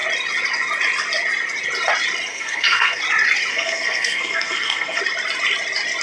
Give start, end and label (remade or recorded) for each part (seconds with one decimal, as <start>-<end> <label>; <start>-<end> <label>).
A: 0.0-2.3 recorded; 2.3-3.0 remade; 3.0-3.5 recorded; 3.5-5.0 remade; 5.0-6.0 recorded